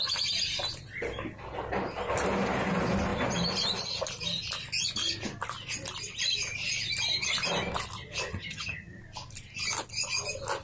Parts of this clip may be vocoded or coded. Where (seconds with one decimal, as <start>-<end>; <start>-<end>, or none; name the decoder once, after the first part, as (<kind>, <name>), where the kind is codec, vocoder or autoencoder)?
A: 8.3-9.0 (vocoder, HiFi-GAN)